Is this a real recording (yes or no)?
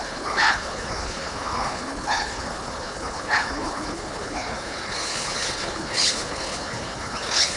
no